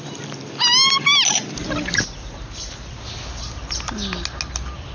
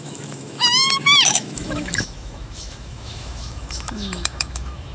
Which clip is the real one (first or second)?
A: first